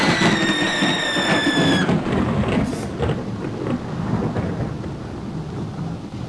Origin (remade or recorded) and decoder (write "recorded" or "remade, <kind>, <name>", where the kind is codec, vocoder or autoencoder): recorded